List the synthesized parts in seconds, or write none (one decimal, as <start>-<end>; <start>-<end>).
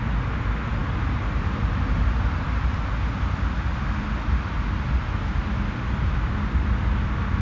none